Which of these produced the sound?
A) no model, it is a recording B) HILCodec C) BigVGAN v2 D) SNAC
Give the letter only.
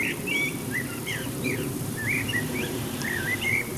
C